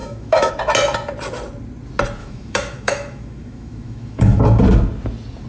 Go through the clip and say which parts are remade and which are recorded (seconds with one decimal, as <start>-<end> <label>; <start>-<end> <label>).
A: 0.0-0.5 remade; 0.5-2.2 recorded; 2.2-4.4 remade; 4.4-5.5 recorded